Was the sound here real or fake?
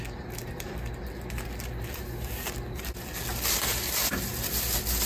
real